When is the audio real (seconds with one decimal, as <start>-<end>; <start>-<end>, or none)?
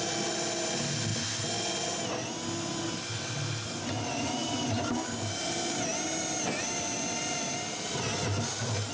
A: 0.0-8.9